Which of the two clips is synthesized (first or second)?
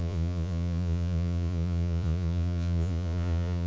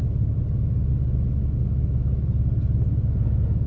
first